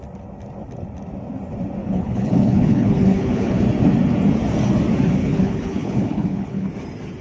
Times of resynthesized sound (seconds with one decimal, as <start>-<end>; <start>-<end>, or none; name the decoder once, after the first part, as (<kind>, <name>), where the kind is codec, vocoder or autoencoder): 1.8-3.6 (codec, HILCodec); 5.2-6.7